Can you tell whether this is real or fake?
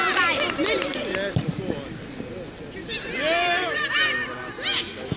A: real